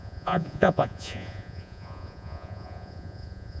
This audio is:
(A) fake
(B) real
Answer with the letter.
A